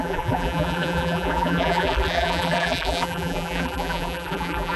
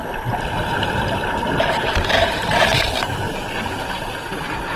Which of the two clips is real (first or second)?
second